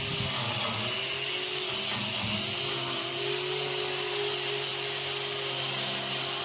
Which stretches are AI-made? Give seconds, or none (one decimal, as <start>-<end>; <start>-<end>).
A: none